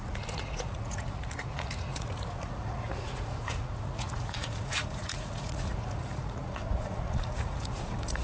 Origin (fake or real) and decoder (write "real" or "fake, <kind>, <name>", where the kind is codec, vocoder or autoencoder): fake, vocoder, Vocos